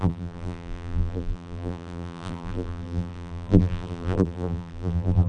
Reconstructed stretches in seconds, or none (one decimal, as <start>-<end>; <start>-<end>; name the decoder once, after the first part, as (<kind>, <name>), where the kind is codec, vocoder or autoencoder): 0.0-5.3 (vocoder, BigVGAN v2)